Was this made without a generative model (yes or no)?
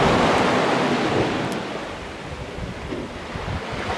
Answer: yes